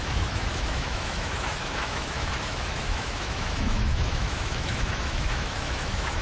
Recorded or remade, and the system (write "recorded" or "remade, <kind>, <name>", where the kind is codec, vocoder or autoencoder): remade, autoencoder, DAC-VAE